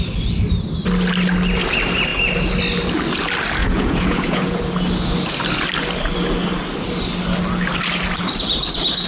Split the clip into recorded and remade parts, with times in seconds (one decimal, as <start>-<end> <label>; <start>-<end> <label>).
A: 0.0-3.6 recorded; 3.6-4.6 remade; 4.6-9.1 recorded